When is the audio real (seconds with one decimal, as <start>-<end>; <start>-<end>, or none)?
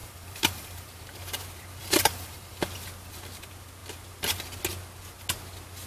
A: 1.0-1.8; 2.5-5.9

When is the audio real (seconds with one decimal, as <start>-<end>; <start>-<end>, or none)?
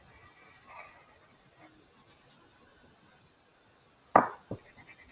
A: 0.0-5.1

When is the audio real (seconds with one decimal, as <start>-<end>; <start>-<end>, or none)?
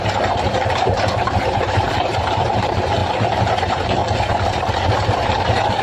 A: 4.0-4.5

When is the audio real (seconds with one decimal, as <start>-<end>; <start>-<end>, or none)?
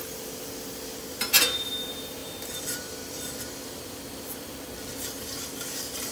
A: 0.0-2.2; 3.4-6.1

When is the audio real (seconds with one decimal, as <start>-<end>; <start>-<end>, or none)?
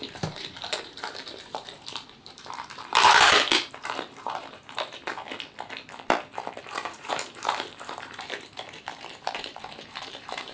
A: 5.1-6.6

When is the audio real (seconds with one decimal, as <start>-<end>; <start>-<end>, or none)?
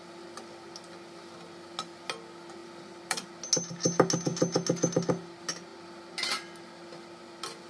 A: 0.0-2.6; 3.3-7.7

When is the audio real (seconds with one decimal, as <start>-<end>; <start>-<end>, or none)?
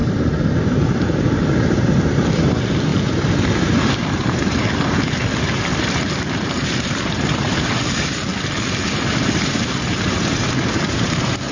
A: 0.0-0.6; 8.3-8.8